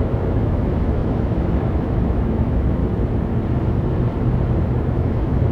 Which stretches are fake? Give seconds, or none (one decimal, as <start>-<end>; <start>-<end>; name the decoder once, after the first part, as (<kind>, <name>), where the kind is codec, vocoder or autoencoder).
0.0-2.8 (autoencoder, DAC-VAE); 4.6-5.5